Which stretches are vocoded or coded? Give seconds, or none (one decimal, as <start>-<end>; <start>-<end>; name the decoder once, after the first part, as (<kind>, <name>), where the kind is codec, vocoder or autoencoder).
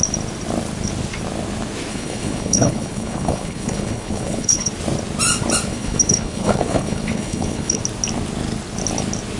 1.9-4.7 (codec, HILCodec); 5.7-7.8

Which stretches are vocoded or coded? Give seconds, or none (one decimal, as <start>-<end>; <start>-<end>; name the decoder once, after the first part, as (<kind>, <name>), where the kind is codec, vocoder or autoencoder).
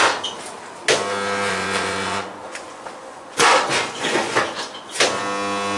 1.5-5.0 (vocoder, Vocos)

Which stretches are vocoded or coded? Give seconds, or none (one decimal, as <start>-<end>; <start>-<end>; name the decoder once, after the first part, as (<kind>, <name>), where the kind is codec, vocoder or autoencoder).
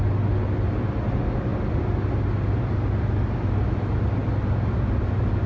none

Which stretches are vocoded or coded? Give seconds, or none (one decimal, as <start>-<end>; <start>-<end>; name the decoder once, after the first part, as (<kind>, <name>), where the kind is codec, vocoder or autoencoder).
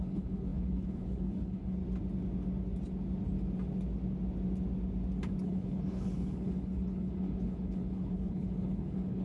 0.0-1.8 (codec, HILCodec); 5.4-9.2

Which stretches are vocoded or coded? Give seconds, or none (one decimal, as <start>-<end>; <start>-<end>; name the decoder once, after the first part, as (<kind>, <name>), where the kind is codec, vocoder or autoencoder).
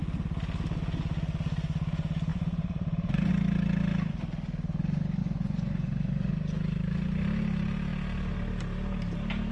2.3-3.3 (vocoder, Vocos); 5.2-6.3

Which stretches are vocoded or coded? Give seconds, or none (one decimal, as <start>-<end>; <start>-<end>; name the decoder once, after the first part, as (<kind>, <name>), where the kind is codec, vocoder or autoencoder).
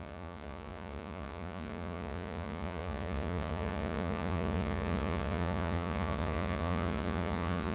0.0-7.7 (vocoder, Vocos)